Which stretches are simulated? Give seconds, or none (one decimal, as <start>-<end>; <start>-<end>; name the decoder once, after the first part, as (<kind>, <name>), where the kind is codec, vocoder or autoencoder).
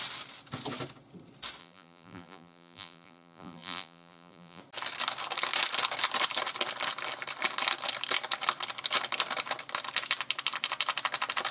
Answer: 1.6-4.6 (vocoder, BigVGAN v2)